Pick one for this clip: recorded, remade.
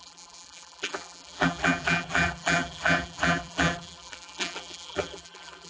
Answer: remade